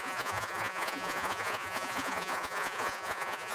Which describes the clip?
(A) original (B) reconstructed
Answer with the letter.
B